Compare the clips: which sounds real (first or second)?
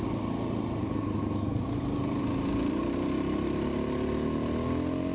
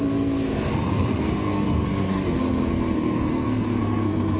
first